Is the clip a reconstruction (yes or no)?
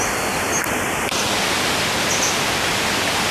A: no